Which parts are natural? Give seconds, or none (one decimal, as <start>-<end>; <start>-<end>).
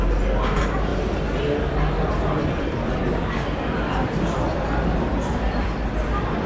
0.0-6.5